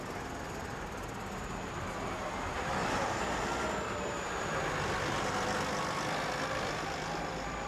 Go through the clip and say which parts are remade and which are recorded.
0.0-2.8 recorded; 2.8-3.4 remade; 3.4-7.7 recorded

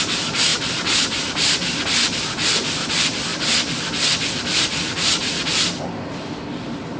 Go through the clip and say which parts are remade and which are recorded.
0.0-0.5 remade; 0.5-2.9 recorded; 2.9-3.3 remade; 3.3-4.3 recorded; 4.3-4.7 remade; 4.7-5.2 recorded; 5.2-7.0 remade

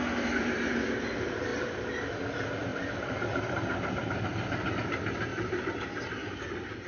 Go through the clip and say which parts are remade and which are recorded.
0.0-2.7 recorded; 2.7-4.7 remade; 4.7-5.3 recorded; 5.3-6.9 remade

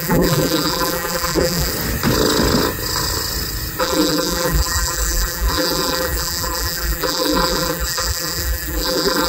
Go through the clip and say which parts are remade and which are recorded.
0.0-1.7 remade; 1.7-3.8 recorded; 3.8-9.3 remade

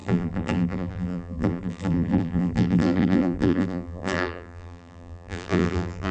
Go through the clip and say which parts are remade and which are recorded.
0.0-6.1 remade

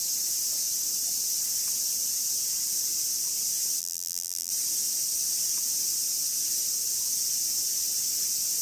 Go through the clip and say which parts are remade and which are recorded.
0.0-3.8 recorded; 3.8-4.5 remade; 4.5-8.6 recorded